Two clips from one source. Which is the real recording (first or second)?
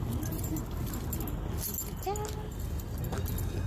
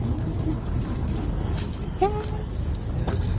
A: first